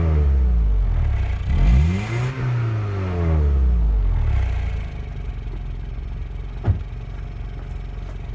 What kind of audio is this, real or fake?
real